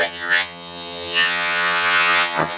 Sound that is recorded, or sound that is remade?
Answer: remade